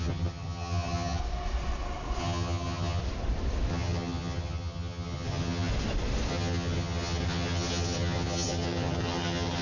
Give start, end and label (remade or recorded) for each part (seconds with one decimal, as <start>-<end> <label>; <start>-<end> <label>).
0.0-1.2 remade; 1.2-2.2 recorded; 2.2-3.0 remade; 3.0-3.7 recorded; 3.7-5.7 remade; 5.7-6.3 recorded; 6.3-9.6 remade